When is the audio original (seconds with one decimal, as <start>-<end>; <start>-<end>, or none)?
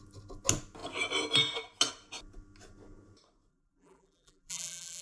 0.0-3.5